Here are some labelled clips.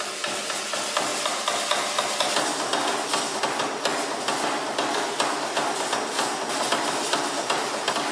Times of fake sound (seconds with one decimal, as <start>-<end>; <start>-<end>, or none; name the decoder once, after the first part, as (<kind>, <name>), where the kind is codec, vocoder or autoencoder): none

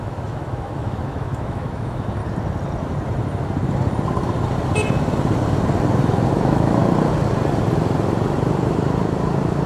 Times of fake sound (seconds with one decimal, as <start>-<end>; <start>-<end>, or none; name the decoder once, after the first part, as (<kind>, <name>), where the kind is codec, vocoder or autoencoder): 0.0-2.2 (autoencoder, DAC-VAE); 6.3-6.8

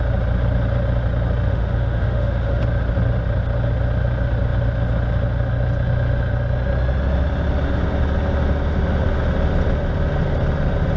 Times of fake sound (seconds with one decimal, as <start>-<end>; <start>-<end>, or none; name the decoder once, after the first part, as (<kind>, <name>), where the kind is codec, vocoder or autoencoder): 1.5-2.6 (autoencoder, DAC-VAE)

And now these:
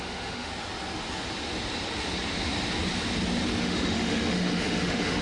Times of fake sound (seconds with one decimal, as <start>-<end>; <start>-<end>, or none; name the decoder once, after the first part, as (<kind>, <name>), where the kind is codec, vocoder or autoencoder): 0.0-0.5 (autoencoder, DAC-VAE); 3.6-5.2

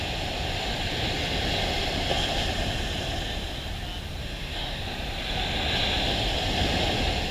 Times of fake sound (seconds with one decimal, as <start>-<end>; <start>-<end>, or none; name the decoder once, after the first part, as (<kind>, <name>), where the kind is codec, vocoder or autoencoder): 4.2-4.8 (autoencoder, DAC-VAE)